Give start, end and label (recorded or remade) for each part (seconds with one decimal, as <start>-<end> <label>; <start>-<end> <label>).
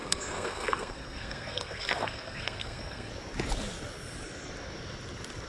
0.0-3.1 remade; 3.1-5.5 recorded